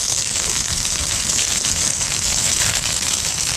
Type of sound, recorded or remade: remade